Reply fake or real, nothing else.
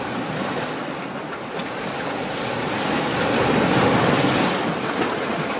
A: real